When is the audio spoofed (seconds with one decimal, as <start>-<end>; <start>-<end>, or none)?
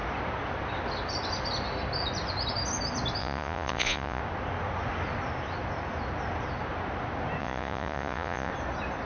3.2-4.2; 7.4-8.5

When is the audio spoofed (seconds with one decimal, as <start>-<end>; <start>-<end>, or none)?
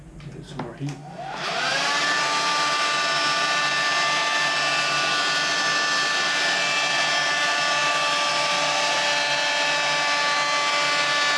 none